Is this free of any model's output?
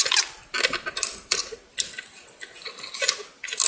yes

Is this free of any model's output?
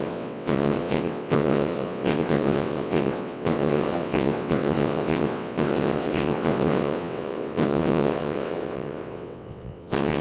no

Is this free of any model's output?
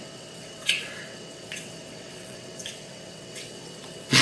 no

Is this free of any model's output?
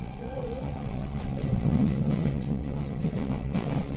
no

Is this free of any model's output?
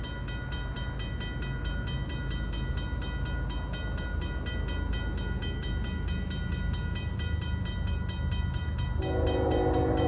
yes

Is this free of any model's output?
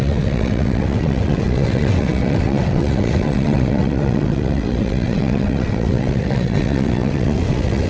no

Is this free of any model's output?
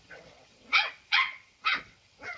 no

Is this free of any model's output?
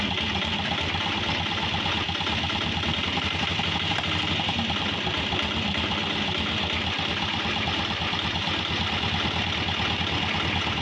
yes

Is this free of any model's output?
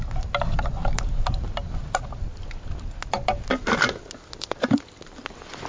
yes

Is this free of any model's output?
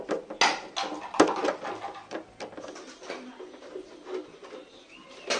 yes